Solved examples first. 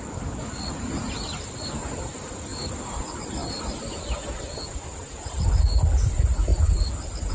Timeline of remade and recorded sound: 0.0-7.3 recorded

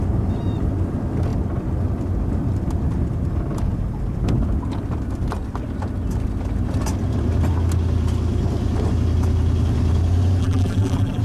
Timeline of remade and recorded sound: 0.0-10.4 recorded; 10.4-11.2 remade